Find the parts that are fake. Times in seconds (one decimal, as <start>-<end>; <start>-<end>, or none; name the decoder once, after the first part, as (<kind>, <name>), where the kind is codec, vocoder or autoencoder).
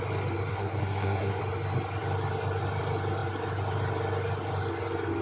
0.5-1.4 (codec, SNAC)